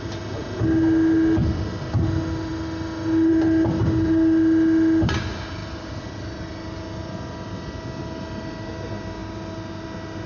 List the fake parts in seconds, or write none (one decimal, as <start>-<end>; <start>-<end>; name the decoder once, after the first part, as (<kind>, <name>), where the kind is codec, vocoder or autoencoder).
none